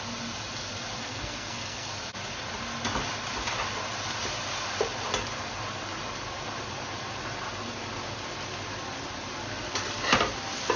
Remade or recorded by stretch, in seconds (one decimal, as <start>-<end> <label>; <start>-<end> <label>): 0.0-1.0 recorded; 1.0-1.9 remade; 1.9-10.8 recorded